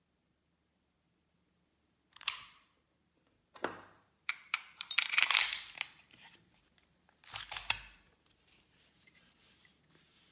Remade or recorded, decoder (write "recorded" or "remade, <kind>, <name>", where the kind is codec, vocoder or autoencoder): remade, vocoder, BigVGAN v2